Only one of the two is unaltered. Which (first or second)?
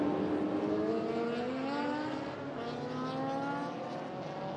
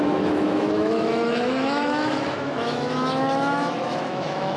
first